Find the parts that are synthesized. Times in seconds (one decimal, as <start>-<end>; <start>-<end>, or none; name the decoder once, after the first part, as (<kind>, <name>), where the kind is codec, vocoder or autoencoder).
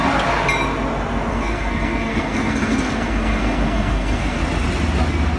1.3-4.4 (codec, SNAC)